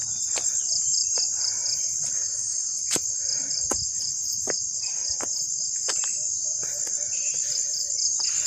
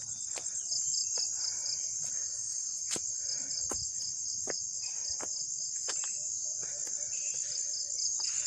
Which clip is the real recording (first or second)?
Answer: second